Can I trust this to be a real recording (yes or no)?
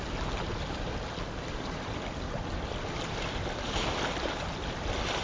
yes